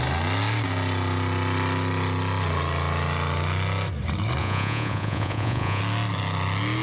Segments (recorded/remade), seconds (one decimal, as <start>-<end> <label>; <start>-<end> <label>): 0.0-4.4 recorded; 4.4-5.8 remade; 5.8-6.8 recorded